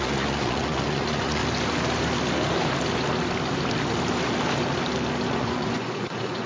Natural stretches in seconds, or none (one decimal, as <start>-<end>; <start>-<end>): 1.4-5.3